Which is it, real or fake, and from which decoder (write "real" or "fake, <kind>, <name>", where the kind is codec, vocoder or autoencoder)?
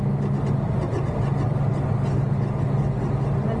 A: real